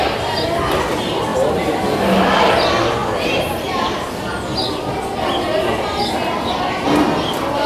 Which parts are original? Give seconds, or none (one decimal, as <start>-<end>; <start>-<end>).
0.0-1.3; 2.5-7.7